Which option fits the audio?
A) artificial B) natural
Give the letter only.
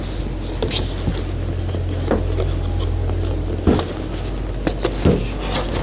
B